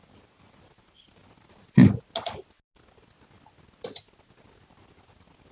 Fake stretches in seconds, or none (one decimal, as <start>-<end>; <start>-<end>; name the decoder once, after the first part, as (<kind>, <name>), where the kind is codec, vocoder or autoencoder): none